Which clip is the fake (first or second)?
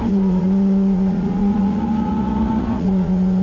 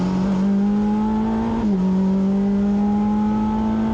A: first